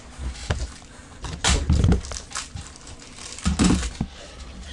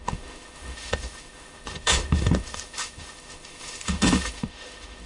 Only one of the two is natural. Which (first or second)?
first